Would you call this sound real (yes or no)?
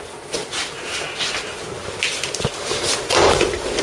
yes